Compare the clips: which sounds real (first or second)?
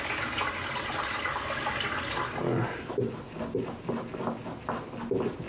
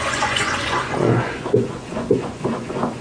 first